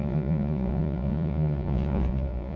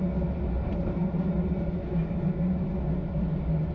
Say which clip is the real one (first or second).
second